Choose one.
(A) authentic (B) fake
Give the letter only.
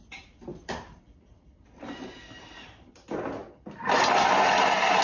A